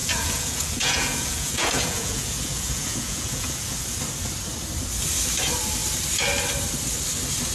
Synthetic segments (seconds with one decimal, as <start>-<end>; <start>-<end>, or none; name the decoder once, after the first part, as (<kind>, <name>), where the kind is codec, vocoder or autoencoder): 0.0-3.8 (vocoder, Vocos)